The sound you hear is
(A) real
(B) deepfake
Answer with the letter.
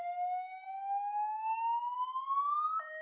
A